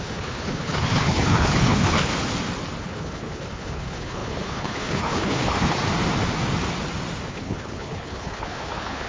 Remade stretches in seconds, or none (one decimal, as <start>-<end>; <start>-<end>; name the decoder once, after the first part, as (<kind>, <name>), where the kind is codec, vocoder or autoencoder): 0.0-2.1 (codec, HILCodec); 2.8-5.8; 7.3-9.1